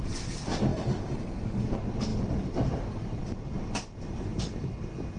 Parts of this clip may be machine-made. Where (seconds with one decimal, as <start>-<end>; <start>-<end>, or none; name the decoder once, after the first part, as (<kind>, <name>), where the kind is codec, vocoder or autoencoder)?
0.7-1.7 (codec, DAC)